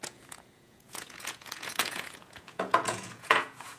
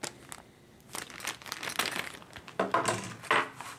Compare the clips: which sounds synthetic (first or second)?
first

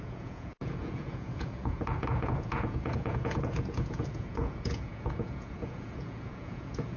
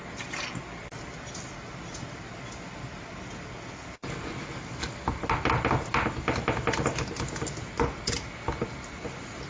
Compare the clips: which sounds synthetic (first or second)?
first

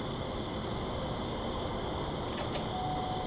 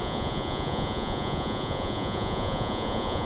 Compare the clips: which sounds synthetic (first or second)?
second